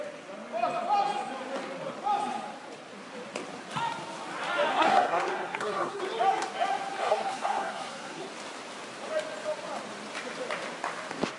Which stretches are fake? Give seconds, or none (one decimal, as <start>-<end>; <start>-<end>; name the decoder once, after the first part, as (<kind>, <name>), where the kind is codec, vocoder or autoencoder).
4.7-6.0 (codec, SNAC); 7.0-8.2